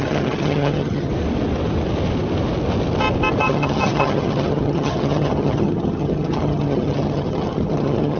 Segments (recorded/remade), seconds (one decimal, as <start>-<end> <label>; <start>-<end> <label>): 0.0-1.1 remade; 1.1-3.4 recorded; 3.4-8.2 remade